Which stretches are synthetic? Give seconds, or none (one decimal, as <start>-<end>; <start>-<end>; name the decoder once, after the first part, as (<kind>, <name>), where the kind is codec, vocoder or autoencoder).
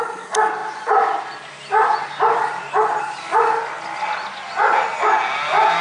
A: none